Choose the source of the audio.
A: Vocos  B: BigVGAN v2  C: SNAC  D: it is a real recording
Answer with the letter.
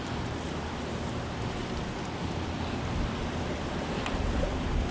D